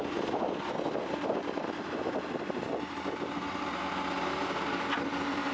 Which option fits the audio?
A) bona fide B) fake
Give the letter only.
A